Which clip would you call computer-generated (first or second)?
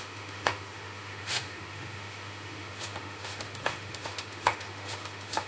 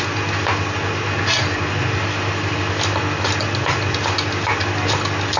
first